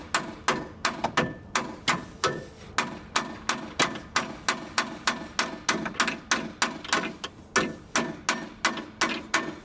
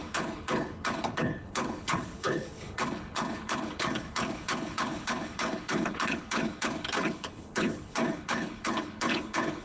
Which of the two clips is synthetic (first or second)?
second